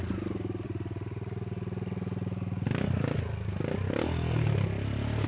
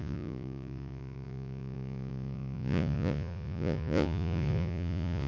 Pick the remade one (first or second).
second